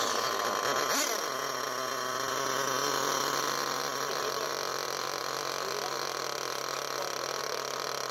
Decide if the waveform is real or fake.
real